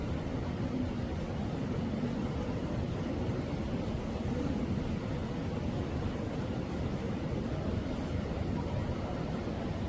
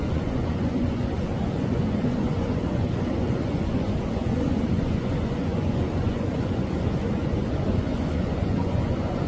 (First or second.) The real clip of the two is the first